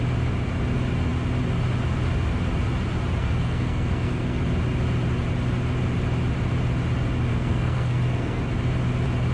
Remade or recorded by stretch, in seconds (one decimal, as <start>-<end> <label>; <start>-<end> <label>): 0.0-3.2 recorded; 3.2-4.4 remade; 4.4-7.3 recorded; 7.3-8.4 remade; 8.4-9.3 recorded